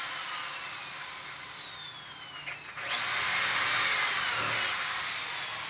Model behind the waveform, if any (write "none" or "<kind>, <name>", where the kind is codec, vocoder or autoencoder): none